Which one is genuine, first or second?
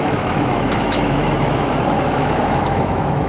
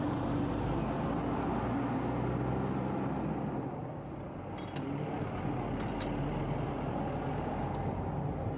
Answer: second